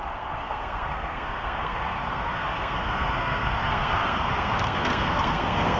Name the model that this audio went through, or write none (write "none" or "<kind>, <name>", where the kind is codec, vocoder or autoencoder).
codec, SNAC